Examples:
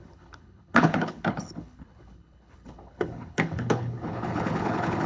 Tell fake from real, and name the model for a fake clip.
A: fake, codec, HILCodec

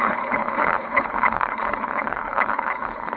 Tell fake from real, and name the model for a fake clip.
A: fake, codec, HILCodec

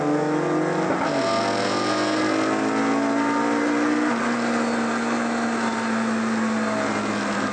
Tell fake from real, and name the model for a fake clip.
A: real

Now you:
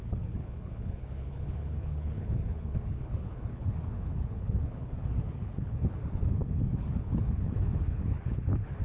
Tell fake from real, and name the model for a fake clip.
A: fake, codec, HILCodec